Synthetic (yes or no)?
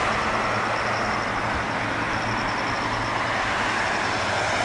no